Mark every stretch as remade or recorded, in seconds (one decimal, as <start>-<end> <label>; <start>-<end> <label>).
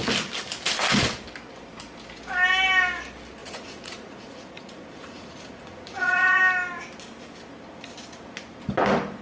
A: 0.0-3.4 recorded; 3.4-6.4 remade; 6.4-9.2 recorded